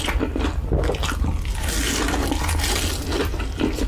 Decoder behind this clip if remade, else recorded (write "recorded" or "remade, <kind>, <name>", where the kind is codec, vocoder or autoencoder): recorded